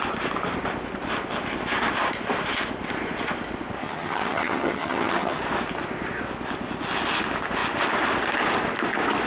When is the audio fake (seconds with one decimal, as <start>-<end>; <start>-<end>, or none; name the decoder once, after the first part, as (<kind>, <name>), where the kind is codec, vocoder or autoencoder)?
3.8-5.4 (vocoder, HiFi-GAN)